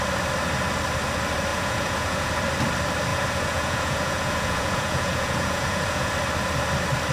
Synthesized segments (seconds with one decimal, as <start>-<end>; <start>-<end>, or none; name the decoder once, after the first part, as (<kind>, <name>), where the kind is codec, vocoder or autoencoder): 1.5-2.3 (vocoder, Vocos); 3.1-6.1